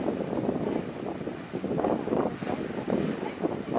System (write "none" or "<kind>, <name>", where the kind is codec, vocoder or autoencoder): none